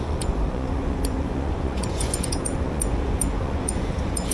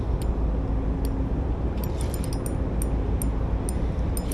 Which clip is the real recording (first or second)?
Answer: second